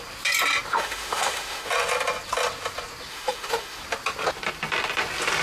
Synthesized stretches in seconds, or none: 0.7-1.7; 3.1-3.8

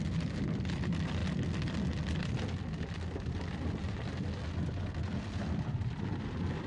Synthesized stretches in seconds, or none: none